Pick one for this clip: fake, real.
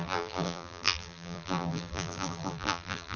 fake